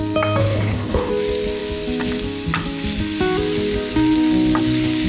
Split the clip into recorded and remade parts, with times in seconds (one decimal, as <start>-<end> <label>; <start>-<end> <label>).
0.0-0.4 recorded; 0.4-1.1 remade; 1.1-5.1 recorded